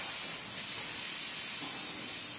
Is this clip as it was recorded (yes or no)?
yes